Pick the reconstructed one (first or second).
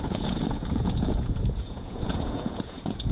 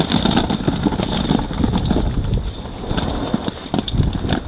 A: first